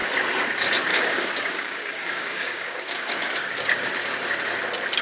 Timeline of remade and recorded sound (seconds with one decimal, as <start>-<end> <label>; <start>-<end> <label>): 0.0-0.9 recorded; 0.9-3.9 remade; 3.9-5.0 recorded